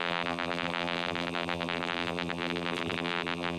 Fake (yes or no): yes